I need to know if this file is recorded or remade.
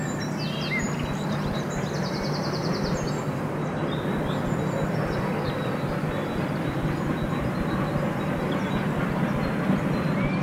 recorded